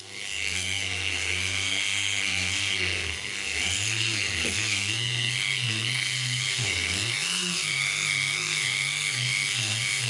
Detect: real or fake fake